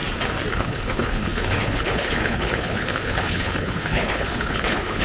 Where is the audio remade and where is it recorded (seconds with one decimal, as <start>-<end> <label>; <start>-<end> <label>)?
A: 0.0-0.5 recorded; 0.5-5.0 remade